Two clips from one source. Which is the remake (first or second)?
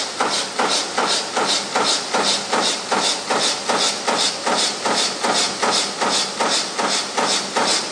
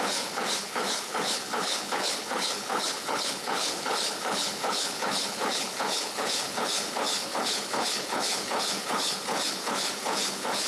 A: second